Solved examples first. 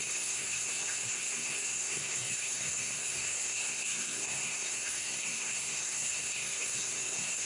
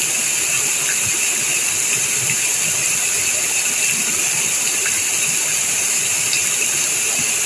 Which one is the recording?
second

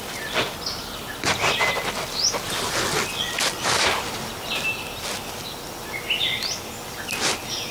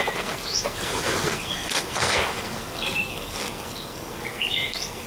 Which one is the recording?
first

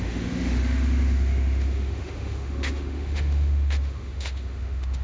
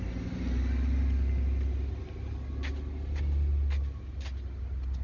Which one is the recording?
second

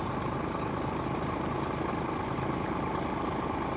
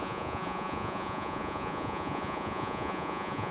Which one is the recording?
first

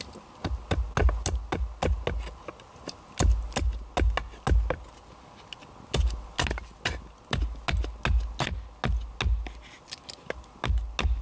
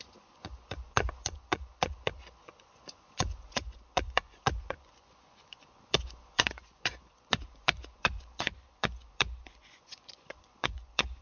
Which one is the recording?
first